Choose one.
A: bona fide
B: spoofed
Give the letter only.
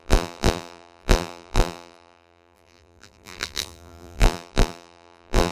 B